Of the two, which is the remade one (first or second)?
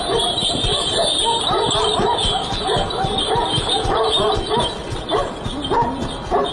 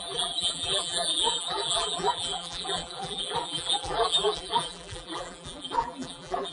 second